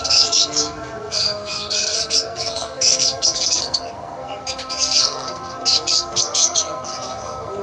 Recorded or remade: remade